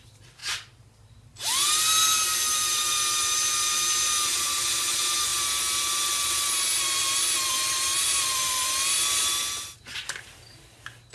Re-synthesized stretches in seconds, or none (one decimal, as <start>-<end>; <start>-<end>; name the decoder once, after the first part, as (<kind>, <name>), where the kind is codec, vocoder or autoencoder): none